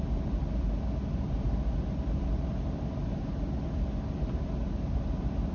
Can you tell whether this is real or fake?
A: real